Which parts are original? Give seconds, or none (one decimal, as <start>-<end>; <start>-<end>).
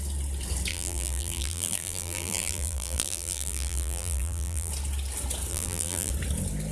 0.0-0.7; 4.7-5.5; 6.1-6.7